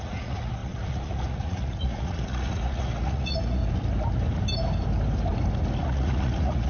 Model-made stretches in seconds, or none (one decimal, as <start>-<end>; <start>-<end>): 0.0-3.6; 5.8-6.7